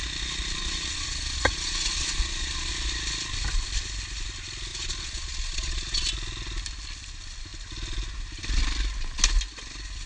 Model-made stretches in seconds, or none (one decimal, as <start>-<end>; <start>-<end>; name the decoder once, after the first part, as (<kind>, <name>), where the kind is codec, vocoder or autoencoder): 0.6-2.7 (vocoder, Vocos); 4.7-6.1